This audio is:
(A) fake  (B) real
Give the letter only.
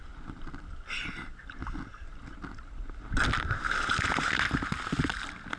B